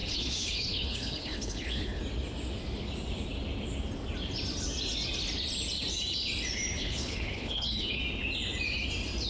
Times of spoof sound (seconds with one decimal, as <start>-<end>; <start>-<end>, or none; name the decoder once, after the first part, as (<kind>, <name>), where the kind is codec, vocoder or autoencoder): 0.0-2.0 (codec, HILCodec); 6.8-8.0